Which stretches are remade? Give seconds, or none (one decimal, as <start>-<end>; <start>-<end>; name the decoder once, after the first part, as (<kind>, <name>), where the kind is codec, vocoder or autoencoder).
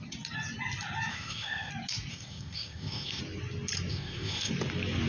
1.1-1.7 (codec, ZipCodec); 2.1-3.2; 3.9-4.5